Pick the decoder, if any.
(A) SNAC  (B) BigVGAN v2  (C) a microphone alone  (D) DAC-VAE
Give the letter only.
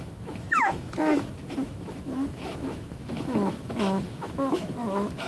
D